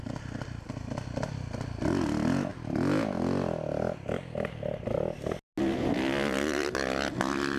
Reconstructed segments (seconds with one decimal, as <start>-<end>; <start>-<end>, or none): none